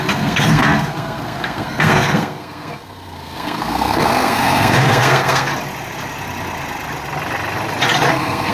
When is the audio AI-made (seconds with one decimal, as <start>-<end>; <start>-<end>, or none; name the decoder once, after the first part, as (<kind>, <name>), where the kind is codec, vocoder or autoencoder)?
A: 0.0-5.5 (codec, SNAC); 8.1-8.5